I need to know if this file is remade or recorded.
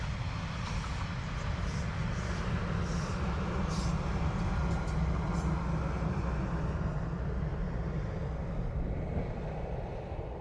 recorded